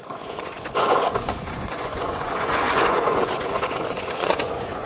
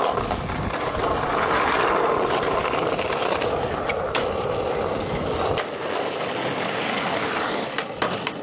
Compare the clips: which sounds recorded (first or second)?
second